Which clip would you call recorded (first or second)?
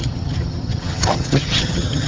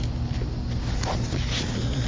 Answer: second